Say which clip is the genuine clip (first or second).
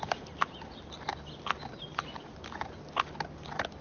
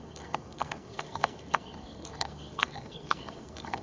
first